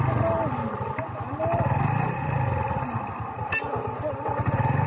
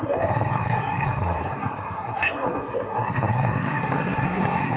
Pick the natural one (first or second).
first